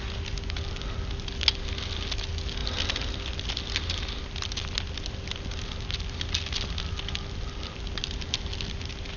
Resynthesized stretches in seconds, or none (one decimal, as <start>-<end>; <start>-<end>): none